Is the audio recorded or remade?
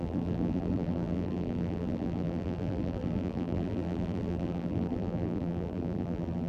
remade